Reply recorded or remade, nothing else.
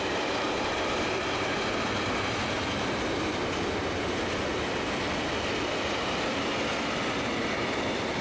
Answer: recorded